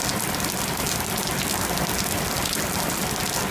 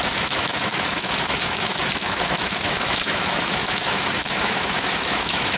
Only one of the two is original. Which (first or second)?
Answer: first